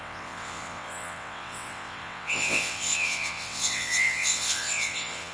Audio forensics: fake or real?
fake